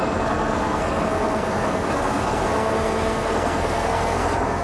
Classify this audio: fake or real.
fake